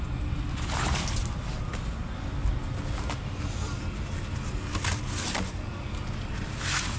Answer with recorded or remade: recorded